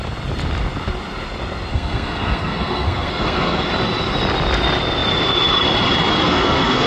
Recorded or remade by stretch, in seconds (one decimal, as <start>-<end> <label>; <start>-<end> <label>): 0.0-1.7 recorded; 1.7-3.7 remade; 3.7-6.2 recorded; 6.2-6.9 remade